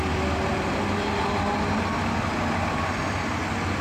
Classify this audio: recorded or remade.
recorded